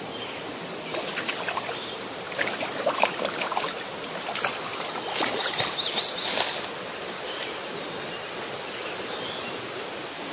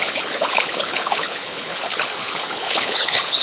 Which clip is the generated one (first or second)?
second